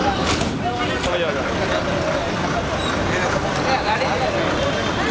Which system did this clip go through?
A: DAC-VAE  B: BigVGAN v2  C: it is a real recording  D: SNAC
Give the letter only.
C